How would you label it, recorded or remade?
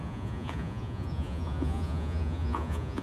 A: remade